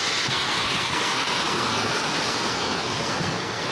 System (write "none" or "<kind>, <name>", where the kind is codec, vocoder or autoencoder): codec, SNAC